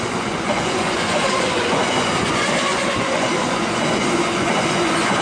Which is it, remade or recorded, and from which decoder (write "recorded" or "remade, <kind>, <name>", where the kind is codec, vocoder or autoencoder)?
remade, vocoder, Vocos